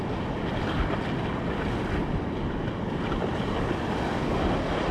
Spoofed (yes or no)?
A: no